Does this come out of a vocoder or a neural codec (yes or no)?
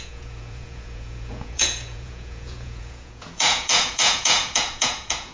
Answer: yes